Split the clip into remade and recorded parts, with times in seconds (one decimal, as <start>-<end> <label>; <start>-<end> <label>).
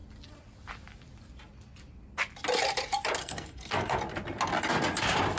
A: 0.0-3.2 recorded; 3.2-4.0 remade; 4.0-5.4 recorded